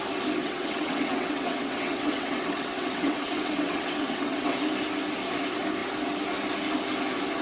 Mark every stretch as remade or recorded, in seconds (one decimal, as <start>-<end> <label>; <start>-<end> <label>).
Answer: 0.0-0.4 recorded; 0.4-4.5 remade; 4.5-7.4 recorded